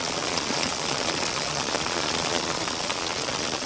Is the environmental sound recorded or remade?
remade